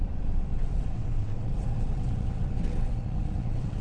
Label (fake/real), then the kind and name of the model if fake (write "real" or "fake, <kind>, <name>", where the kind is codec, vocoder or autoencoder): fake, vocoder, WaveNeXt